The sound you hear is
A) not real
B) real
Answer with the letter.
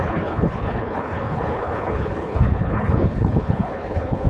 A